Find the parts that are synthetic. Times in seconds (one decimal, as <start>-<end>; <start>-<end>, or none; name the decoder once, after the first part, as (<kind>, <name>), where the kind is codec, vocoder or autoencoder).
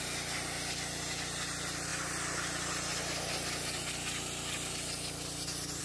none